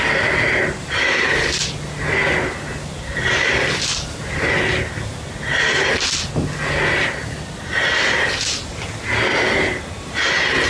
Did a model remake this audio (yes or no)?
no